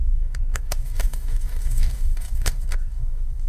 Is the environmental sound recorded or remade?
remade